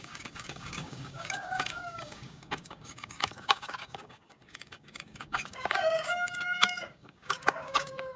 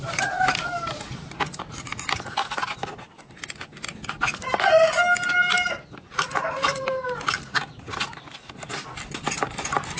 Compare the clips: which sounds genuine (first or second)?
second